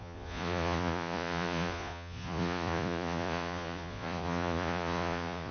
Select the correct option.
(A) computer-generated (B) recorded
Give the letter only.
A